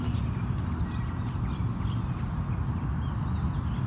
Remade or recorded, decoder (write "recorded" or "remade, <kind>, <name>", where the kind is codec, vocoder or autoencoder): recorded